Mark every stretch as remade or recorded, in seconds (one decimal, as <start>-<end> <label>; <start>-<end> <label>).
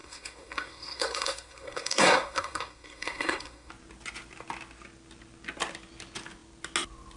0.0-3.7 remade; 3.7-7.2 recorded